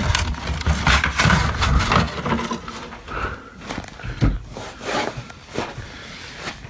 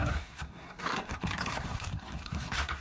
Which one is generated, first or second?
second